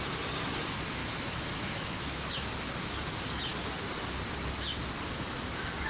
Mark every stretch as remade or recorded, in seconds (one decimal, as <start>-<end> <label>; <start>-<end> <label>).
0.0-1.0 recorded; 1.0-2.3 remade; 2.3-5.9 recorded